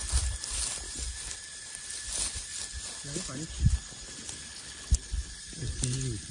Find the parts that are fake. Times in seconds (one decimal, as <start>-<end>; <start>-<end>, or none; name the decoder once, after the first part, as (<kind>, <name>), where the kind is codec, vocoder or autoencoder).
4.5-5.3 (codec, HILCodec)